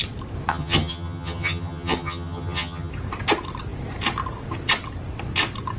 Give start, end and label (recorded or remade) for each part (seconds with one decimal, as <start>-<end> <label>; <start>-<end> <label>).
0.0-0.5 recorded; 0.5-2.9 remade; 2.9-5.8 recorded